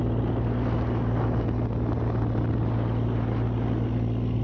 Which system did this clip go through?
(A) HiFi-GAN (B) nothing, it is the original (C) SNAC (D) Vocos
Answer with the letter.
B